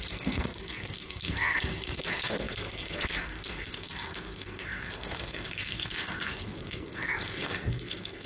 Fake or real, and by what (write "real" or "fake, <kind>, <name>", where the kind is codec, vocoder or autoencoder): fake, codec, SNAC